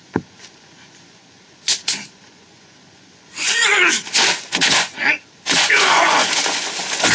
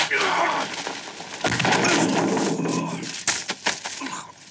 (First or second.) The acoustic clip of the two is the second